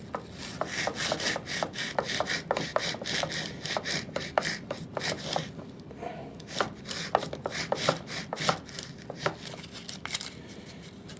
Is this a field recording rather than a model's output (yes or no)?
yes